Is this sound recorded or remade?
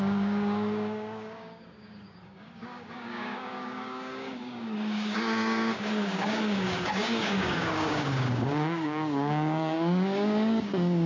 remade